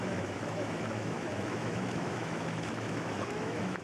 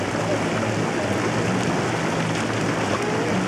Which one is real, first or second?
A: second